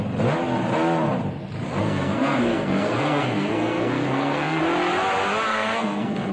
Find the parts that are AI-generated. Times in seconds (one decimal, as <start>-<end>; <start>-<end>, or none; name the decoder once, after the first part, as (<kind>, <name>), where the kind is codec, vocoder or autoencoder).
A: 1.8-4.6 (codec, SNAC); 5.5-6.3